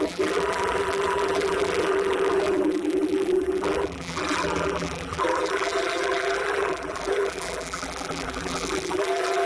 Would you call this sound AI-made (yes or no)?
yes